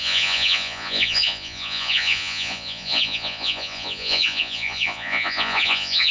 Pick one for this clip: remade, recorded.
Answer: remade